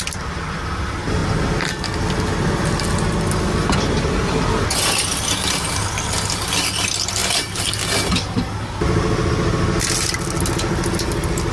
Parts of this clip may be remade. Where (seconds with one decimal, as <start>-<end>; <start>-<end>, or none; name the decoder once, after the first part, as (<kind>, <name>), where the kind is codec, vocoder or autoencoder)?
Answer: none